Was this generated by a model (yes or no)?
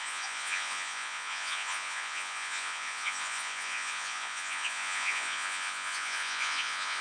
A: yes